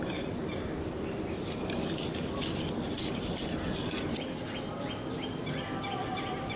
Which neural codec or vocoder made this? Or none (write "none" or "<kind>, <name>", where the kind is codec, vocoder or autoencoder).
none